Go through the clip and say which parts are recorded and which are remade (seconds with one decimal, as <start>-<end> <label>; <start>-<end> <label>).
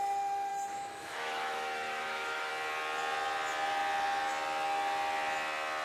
0.0-0.5 recorded; 0.5-2.5 remade; 2.5-5.8 recorded